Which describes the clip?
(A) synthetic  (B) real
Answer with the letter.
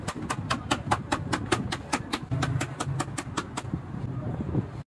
B